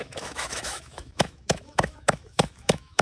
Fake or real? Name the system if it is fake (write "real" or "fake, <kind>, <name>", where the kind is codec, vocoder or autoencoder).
fake, autoencoder, DAC-VAE